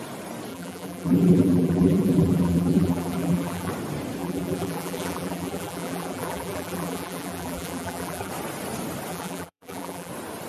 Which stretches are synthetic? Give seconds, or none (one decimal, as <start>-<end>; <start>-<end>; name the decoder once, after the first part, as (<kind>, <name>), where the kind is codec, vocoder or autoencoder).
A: 0.5-3.7 (vocoder, BigVGAN v2); 4.2-8.3; 9.1-10.1